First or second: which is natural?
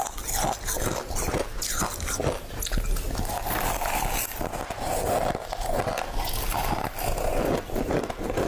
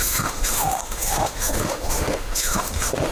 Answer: first